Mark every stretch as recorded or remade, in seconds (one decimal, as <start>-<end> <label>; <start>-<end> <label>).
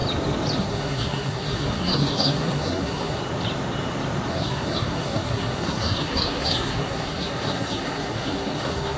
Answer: 0.0-0.6 recorded; 0.6-3.2 remade; 3.2-4.3 recorded; 4.3-9.0 remade